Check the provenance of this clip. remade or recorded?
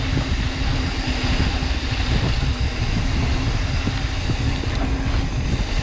recorded